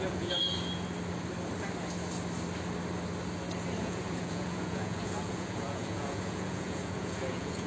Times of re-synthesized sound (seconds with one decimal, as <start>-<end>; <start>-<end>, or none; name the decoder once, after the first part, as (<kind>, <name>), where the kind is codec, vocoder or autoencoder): 0.0-0.4 (vocoder, Vocos); 3.8-7.7